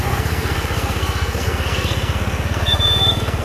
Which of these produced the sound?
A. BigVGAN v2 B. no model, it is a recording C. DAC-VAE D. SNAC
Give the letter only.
D